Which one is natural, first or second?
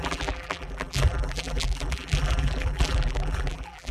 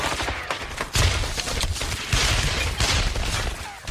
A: second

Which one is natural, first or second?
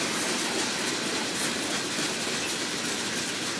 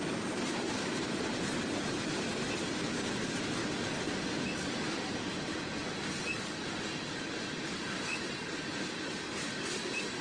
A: first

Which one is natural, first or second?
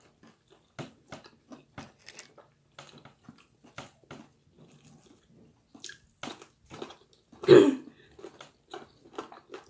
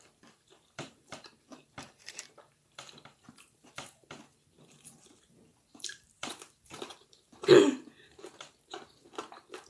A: first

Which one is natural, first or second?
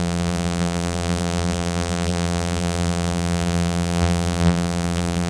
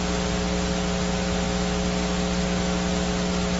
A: second